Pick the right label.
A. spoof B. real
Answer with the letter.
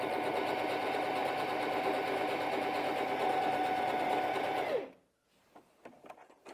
B